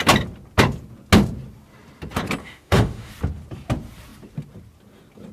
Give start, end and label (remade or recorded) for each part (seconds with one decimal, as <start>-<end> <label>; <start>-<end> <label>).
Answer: 0.0-2.4 recorded; 2.4-3.1 remade; 3.1-5.3 recorded

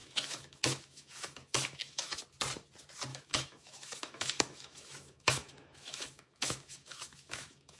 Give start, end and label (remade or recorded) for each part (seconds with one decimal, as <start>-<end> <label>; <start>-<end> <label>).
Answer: 0.0-2.2 remade; 2.2-3.1 recorded; 3.1-7.8 remade

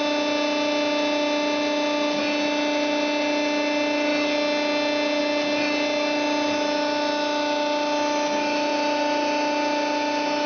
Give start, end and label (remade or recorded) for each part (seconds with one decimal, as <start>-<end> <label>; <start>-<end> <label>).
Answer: 0.0-10.5 recorded

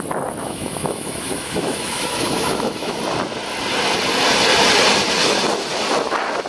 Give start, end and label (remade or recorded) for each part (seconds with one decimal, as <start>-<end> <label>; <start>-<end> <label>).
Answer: 0.0-0.4 recorded; 0.4-3.0 remade; 3.0-6.5 recorded

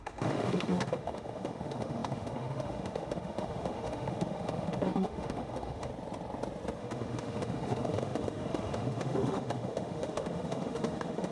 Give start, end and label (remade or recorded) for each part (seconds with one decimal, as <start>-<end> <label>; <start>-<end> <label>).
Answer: 0.0-5.9 remade; 5.9-6.8 recorded; 6.8-11.3 remade

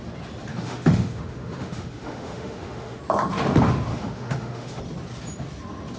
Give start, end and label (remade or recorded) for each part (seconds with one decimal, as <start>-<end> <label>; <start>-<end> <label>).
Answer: 0.0-0.5 recorded; 0.5-3.0 remade; 3.0-3.9 recorded; 3.9-4.8 remade; 4.8-6.0 recorded

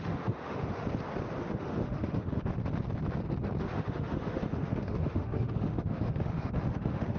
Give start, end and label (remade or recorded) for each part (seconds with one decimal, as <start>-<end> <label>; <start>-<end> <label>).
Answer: 0.0-0.8 remade; 0.8-1.4 recorded; 1.4-2.5 remade; 2.5-3.6 recorded; 3.6-7.2 remade